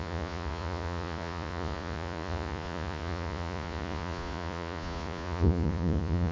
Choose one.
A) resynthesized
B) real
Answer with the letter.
A